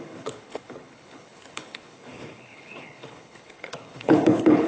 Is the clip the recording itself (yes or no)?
no